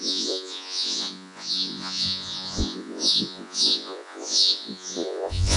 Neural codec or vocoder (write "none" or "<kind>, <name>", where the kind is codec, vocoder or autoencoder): vocoder, Vocos